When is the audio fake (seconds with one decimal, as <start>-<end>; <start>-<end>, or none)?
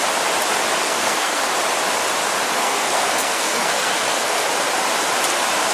0.8-1.5; 2.5-4.5